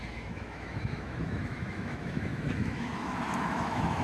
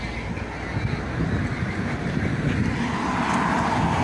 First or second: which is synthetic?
first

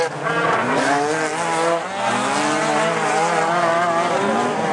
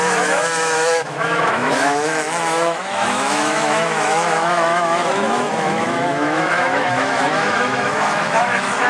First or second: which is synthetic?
second